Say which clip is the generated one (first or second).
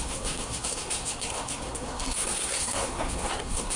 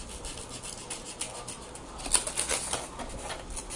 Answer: first